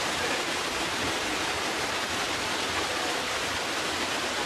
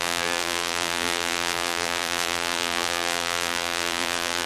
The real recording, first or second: first